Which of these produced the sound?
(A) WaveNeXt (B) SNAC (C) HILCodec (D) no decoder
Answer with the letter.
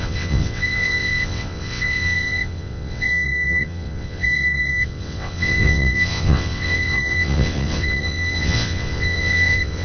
A